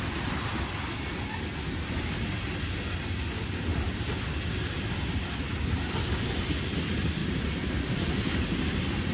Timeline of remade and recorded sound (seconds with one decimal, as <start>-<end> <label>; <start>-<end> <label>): 0.0-3.7 recorded; 3.7-4.2 remade; 4.2-7.2 recorded; 7.2-8.1 remade; 8.1-9.1 recorded